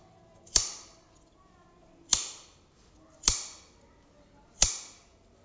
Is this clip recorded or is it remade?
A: recorded